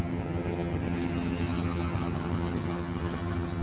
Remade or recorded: remade